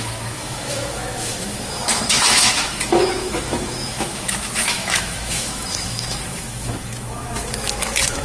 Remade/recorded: remade